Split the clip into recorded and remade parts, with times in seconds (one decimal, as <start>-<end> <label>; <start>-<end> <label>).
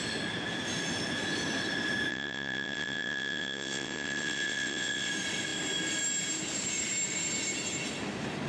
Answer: 0.0-2.1 recorded; 2.1-5.1 remade; 5.1-8.5 recorded